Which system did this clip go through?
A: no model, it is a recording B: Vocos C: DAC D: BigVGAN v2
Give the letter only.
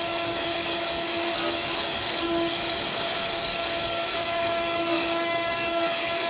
C